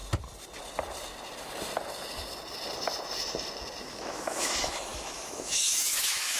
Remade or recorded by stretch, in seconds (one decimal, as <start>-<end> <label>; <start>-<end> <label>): 0.0-3.8 recorded; 3.8-6.4 remade